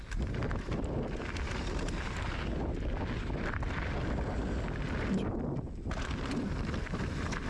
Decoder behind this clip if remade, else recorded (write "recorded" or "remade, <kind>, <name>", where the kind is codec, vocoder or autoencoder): recorded